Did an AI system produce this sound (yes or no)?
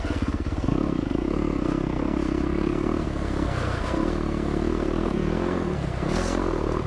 yes